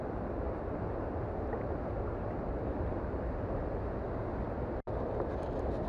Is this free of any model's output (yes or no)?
yes